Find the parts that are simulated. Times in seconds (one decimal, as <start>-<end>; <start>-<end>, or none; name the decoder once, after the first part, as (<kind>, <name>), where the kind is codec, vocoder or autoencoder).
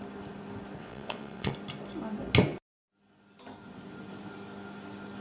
0.8-1.5 (vocoder, WaveNeXt)